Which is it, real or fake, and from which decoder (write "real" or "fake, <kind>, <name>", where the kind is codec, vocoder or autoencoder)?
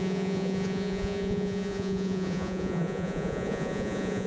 fake, vocoder, Vocos